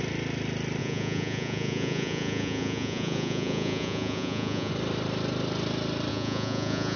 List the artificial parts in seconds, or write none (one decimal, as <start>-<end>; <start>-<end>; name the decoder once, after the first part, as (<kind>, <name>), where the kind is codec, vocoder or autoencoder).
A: 0.8-4.7 (vocoder, Vocos); 6.1-7.0